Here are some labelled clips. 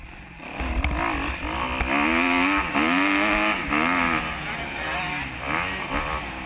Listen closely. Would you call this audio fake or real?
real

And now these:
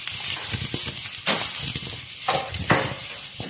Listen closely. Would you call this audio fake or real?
real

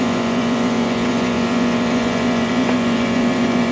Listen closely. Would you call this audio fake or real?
fake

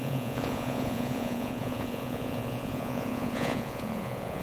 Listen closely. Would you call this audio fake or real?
fake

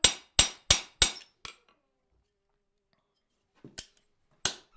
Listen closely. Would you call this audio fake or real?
real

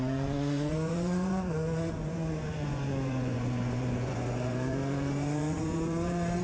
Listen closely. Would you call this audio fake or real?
fake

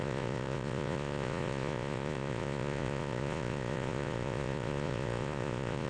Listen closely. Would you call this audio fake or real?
fake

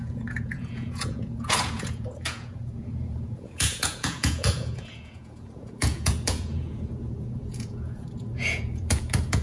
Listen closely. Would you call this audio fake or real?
fake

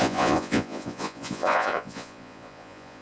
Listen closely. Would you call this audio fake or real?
fake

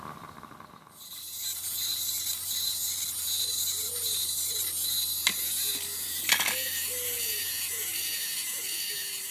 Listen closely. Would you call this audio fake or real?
real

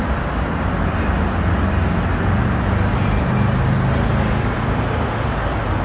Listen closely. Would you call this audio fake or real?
real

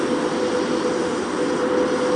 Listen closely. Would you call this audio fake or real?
real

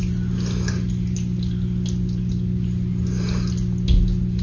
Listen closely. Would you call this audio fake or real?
real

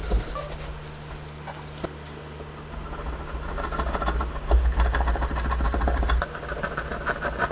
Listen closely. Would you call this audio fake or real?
real